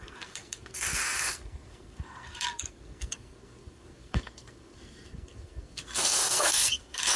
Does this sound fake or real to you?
fake